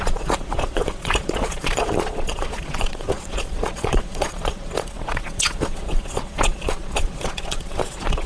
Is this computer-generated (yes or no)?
yes